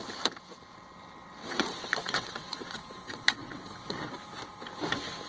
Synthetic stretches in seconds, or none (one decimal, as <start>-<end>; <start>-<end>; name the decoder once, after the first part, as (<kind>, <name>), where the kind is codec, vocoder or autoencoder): 1.4-4.1 (vocoder, WaveNeXt)